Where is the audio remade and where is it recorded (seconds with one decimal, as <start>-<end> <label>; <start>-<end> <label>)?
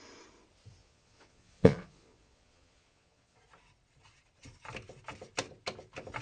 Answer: 0.0-0.8 recorded; 0.8-3.4 remade; 3.4-6.2 recorded